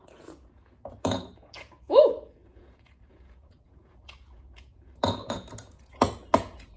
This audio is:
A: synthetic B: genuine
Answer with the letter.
A